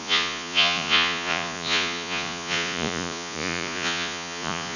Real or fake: fake